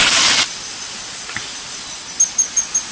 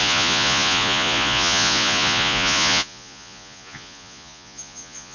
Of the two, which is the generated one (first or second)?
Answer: second